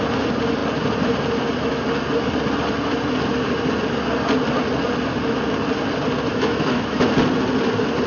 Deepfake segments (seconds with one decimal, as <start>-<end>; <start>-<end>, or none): 6.3-7.1